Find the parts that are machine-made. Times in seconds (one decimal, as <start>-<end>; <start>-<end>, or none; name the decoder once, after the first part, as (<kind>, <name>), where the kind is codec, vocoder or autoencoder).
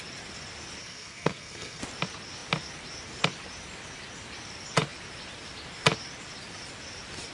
0.8-1.8 (codec, SNAC)